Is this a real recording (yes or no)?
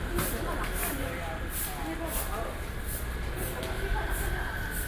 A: yes